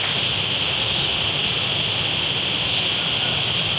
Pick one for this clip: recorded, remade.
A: recorded